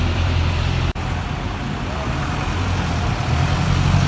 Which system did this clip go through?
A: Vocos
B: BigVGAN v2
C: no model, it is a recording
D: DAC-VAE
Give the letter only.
B